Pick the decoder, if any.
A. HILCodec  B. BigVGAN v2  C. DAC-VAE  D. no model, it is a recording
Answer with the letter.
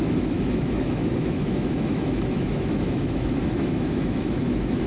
C